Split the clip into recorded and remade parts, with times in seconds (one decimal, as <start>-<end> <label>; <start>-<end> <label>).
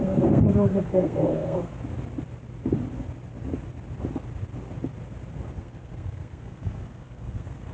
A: 0.0-1.7 remade; 1.7-5.6 recorded; 5.6-7.7 remade